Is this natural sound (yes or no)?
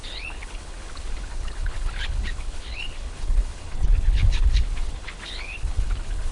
no